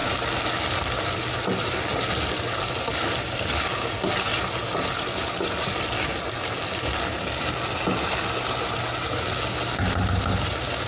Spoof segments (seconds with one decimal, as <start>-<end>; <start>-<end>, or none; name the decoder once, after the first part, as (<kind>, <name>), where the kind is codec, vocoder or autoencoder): none